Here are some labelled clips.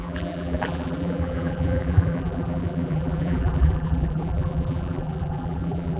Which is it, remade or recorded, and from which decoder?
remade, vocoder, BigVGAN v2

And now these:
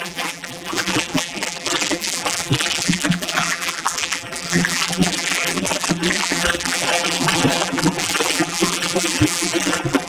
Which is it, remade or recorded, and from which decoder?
remade, vocoder, BigVGAN v2